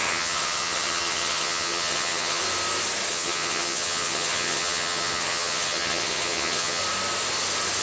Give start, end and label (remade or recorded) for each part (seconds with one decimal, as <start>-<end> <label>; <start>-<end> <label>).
0.0-2.4 remade; 2.4-3.1 recorded; 3.1-6.8 remade; 6.8-7.8 recorded